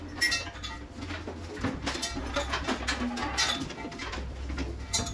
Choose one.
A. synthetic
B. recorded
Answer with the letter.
B